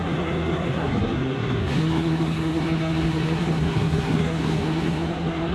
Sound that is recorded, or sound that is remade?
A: remade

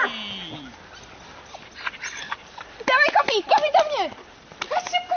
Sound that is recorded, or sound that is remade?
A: recorded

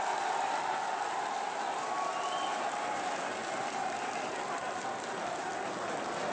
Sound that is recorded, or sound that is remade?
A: recorded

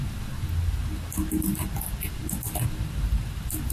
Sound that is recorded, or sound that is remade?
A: recorded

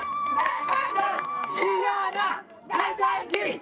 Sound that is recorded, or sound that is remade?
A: remade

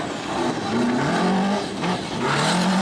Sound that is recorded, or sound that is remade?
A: recorded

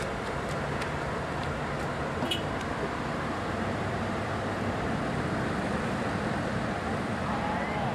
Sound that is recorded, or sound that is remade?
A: remade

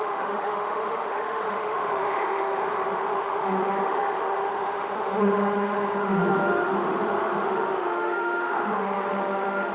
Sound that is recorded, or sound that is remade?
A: remade